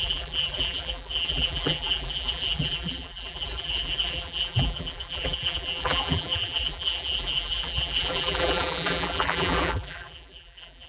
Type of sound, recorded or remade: remade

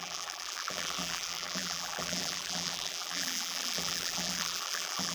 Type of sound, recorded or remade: remade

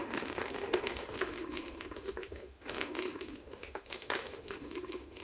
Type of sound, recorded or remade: remade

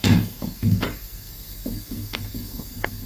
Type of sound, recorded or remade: remade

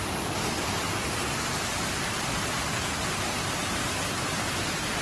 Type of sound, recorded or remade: recorded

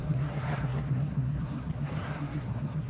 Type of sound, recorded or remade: remade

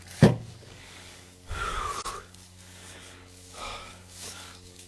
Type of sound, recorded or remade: remade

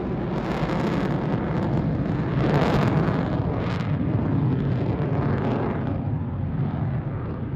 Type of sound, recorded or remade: recorded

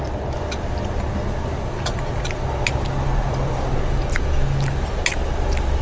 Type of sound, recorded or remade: recorded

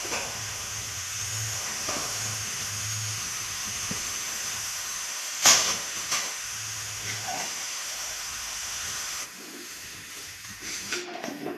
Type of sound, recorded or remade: remade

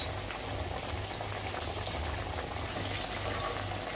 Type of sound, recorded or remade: recorded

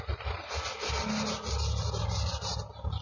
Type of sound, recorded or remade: recorded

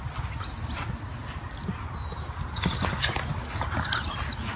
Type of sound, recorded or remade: recorded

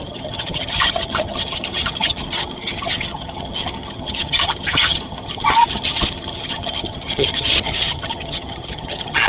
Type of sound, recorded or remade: remade